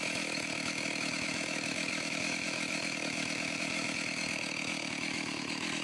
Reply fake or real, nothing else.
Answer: fake